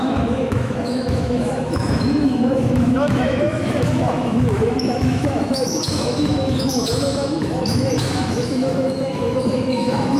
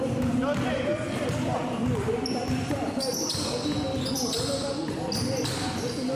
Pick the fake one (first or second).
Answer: first